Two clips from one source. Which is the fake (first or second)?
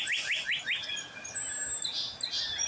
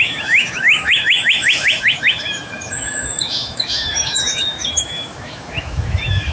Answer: second